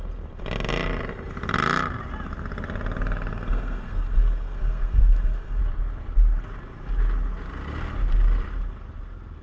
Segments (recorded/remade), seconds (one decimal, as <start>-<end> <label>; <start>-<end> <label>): 0.0-3.3 recorded; 3.3-5.6 remade; 5.6-9.4 recorded